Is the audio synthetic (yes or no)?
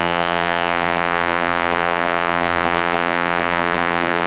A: yes